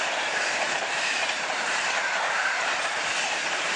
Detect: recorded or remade remade